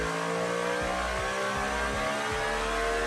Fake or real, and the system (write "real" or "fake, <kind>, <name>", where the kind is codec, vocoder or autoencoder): real